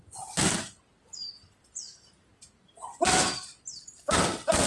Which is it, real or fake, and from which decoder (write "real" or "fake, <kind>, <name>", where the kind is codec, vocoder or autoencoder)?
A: real